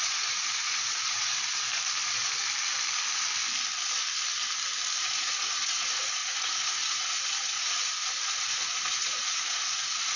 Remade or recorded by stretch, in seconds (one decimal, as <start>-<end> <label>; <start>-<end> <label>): 0.0-1.3 remade; 1.3-5.0 recorded; 5.0-10.2 remade